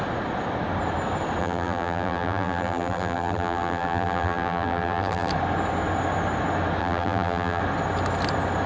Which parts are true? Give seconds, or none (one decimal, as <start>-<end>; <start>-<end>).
0.0-1.4; 5.3-6.8; 7.6-8.7